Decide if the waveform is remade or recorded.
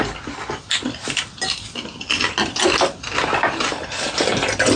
recorded